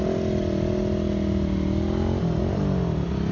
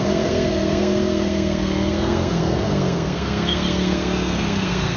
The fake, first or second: second